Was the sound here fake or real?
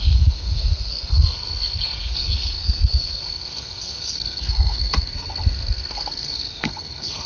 fake